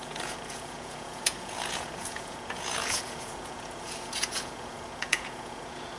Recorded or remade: remade